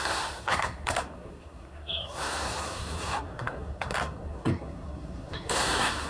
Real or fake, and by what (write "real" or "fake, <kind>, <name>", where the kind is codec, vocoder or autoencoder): fake, codec, SNAC